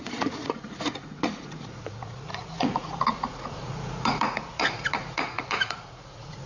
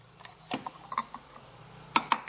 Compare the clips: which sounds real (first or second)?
second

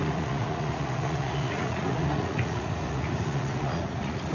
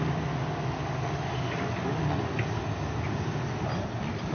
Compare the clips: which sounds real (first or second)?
second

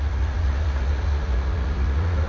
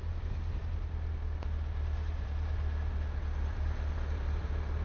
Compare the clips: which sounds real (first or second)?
second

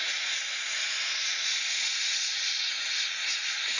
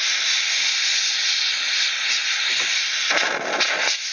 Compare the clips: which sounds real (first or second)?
second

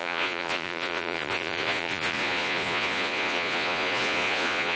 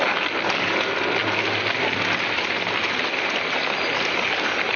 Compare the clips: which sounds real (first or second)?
second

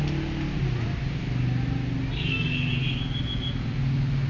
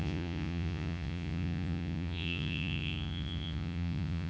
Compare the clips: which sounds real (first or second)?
first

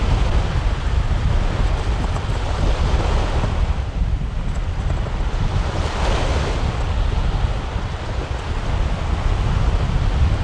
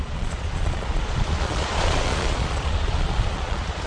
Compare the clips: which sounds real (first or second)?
first